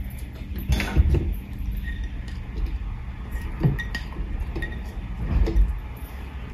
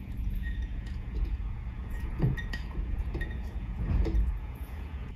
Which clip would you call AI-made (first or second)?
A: second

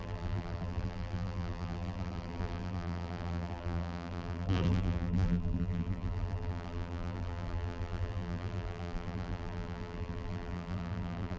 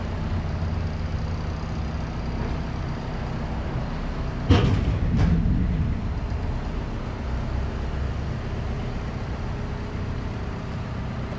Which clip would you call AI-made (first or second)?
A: first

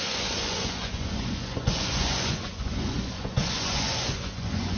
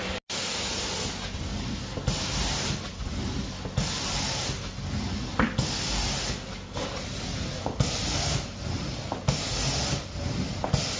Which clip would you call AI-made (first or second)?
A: first